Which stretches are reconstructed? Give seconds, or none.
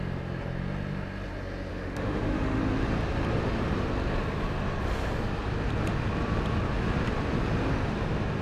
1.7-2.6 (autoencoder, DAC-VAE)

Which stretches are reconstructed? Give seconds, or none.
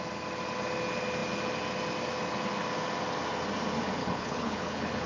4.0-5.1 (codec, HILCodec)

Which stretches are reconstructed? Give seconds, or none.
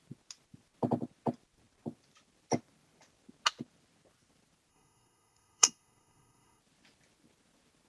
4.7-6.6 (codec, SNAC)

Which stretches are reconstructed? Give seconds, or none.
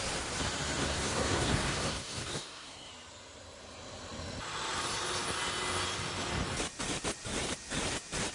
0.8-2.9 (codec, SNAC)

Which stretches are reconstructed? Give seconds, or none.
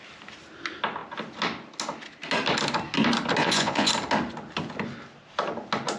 3.4-3.9 (vocoder, Vocos)